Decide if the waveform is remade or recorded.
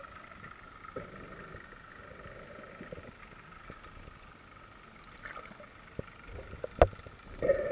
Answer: recorded